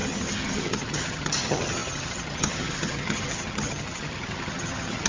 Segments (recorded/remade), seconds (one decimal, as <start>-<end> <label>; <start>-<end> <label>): 0.0-5.1 remade